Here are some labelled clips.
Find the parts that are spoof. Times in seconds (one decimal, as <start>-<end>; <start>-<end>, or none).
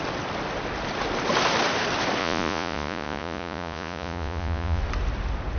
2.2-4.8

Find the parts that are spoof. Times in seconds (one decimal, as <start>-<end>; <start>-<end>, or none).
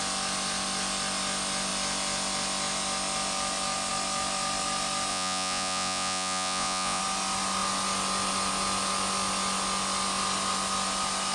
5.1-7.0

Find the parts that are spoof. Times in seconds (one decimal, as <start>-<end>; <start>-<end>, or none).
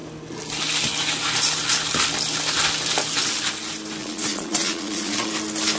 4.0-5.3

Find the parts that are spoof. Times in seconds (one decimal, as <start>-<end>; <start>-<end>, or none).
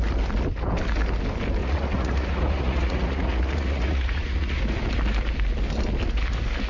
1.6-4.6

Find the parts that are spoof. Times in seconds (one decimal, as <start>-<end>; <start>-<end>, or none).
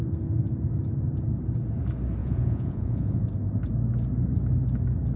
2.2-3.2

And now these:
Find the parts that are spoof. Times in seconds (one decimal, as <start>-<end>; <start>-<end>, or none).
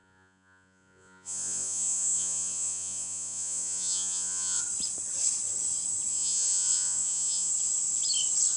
0.0-4.6; 6.1-7.5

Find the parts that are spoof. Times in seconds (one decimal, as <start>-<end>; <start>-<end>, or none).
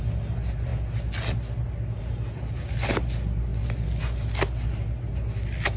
none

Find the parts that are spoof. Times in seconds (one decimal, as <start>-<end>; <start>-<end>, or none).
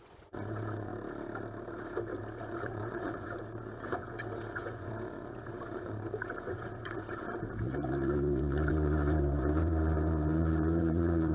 0.0-0.9; 2.4-11.3